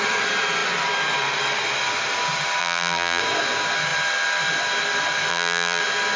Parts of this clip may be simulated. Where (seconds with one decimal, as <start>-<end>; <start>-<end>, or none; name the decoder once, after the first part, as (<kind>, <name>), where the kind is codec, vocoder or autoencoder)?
2.6-3.2 (vocoder, BigVGAN v2); 5.3-5.8